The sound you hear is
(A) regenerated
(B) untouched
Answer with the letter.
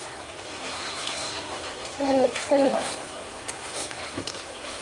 A